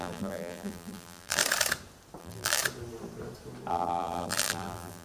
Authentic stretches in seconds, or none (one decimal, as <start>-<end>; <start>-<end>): 1.4-2.2; 2.6-3.7